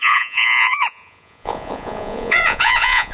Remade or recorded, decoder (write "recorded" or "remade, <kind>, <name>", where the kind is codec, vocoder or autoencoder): remade, vocoder, Vocos